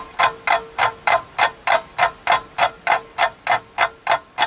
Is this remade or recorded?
recorded